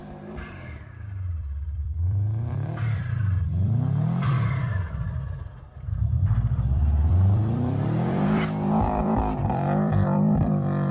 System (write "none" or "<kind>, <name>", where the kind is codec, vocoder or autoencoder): vocoder, BigVGAN v2